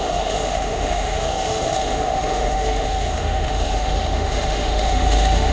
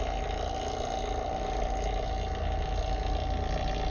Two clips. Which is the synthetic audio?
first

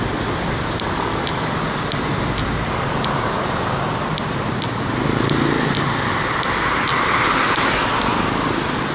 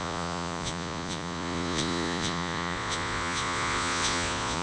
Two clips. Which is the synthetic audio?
second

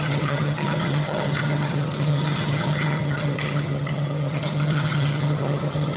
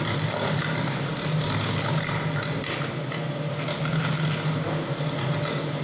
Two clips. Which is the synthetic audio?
first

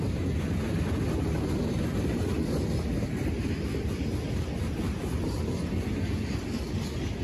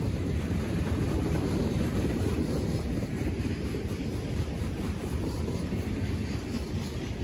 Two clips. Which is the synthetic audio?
second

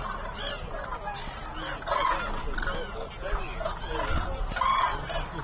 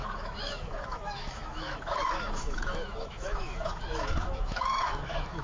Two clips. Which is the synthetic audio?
second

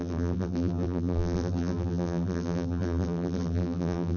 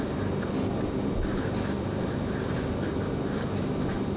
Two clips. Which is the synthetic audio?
first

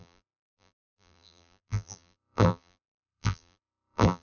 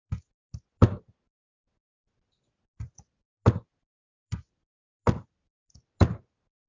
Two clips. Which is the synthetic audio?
first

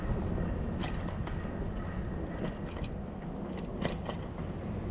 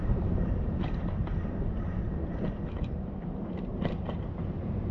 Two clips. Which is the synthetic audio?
second